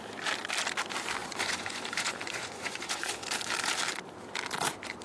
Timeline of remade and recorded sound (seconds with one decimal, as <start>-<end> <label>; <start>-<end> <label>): 0.0-1.2 recorded; 1.2-3.1 remade; 3.1-5.0 recorded